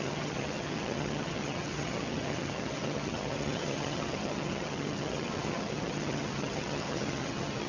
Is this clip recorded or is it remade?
remade